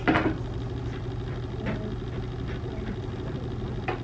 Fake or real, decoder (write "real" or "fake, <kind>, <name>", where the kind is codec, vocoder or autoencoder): real